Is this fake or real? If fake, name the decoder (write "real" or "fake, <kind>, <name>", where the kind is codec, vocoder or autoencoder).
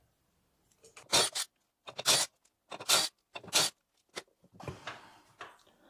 real